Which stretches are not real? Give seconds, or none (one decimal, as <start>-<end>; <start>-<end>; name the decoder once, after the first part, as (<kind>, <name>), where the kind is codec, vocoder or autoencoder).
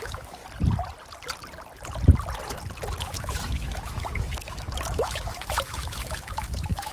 0.0-0.4 (autoencoder, DAC-VAE); 3.0-6.9